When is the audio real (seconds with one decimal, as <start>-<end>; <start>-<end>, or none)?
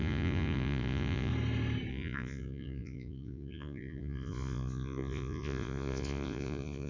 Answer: 1.3-1.9